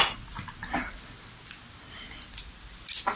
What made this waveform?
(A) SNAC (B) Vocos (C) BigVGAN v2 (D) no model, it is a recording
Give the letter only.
D